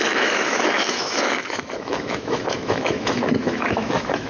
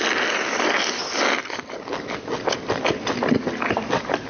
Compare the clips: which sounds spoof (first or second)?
first